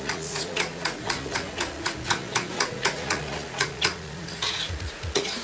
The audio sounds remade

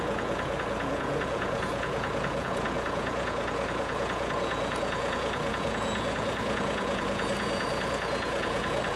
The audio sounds remade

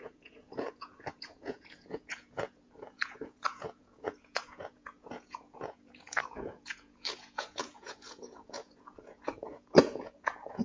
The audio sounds remade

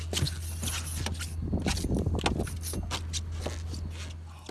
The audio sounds recorded